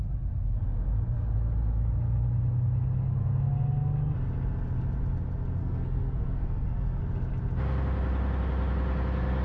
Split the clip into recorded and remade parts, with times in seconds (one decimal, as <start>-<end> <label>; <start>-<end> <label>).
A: 0.0-5.6 recorded; 5.6-7.0 remade; 7.0-9.4 recorded